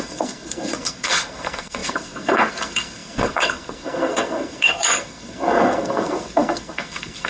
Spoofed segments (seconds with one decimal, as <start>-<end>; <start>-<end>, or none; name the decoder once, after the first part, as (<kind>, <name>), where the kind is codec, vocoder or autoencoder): 0.0-7.3 (codec, SNAC)